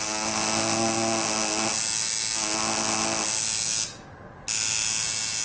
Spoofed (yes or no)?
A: no